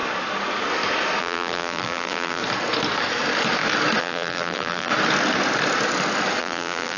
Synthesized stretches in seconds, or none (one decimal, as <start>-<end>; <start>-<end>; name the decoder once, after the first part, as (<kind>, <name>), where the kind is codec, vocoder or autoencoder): 1.2-2.4 (vocoder, BigVGAN v2); 4.0-4.9; 6.4-7.0